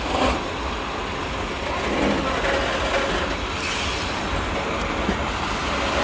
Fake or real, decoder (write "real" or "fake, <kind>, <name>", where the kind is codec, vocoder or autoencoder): real